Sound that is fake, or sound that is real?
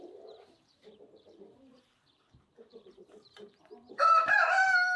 fake